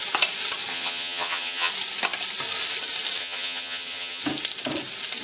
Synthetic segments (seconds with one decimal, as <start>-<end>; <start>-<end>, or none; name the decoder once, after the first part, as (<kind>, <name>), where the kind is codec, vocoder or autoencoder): 0.7-1.7 (vocoder, HiFi-GAN); 3.2-4.2